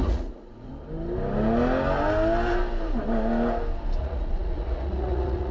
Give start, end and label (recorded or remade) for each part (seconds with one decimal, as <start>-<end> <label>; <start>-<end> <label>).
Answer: 0.0-0.7 remade; 0.7-4.0 recorded; 4.0-5.5 remade